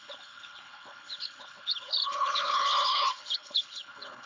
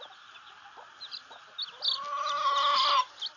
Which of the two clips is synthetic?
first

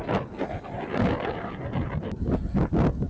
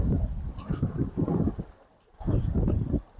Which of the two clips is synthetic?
second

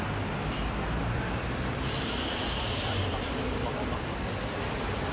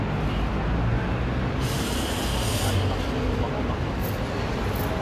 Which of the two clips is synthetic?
first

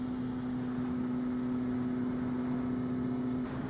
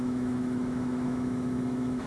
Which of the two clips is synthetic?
second